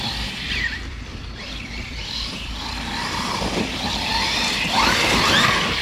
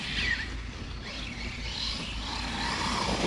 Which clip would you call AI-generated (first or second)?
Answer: first